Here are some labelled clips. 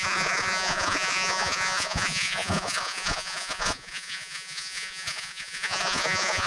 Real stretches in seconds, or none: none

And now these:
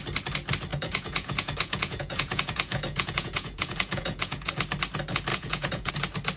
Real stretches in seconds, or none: 0.0-0.7; 4.5-5.3; 5.9-6.4

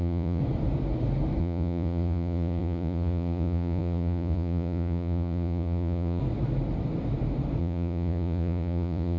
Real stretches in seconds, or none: 0.4-1.4; 6.2-7.6

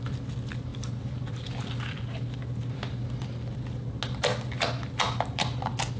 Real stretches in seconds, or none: 0.0-6.0

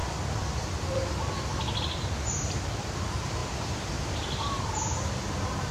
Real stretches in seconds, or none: 1.5-2.4

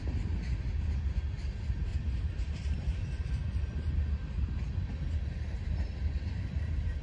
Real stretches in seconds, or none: 0.0-1.9; 3.3-7.0